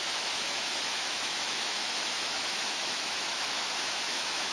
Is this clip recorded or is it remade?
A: remade